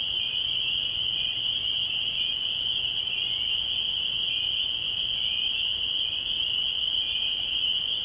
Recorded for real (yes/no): no